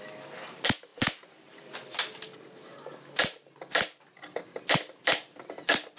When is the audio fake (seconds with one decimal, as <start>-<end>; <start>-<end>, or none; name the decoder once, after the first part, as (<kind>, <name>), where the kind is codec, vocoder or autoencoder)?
none